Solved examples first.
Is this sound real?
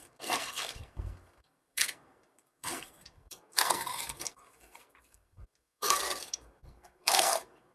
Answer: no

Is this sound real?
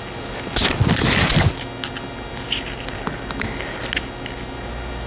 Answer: yes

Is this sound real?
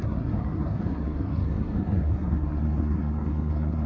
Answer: no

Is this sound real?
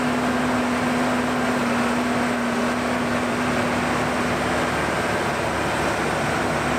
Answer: yes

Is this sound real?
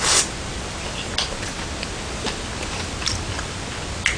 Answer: yes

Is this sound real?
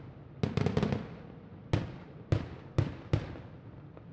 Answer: yes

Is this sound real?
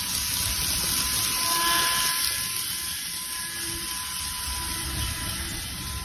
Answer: yes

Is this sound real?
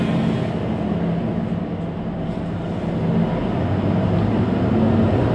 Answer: yes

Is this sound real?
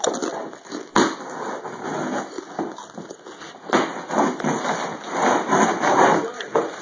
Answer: yes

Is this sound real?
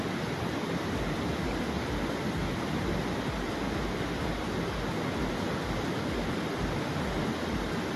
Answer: yes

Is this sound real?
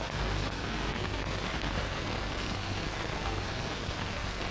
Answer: no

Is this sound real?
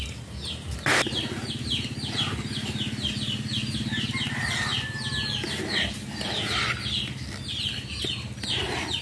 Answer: yes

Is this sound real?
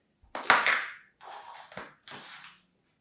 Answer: yes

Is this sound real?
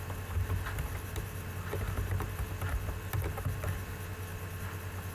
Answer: yes